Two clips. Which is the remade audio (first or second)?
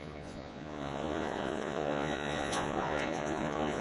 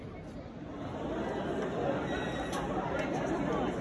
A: first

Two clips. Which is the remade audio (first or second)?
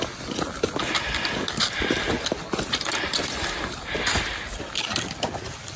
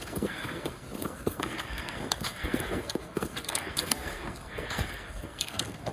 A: second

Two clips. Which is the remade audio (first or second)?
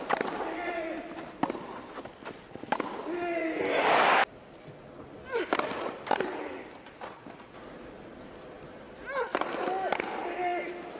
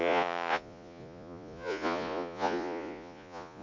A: second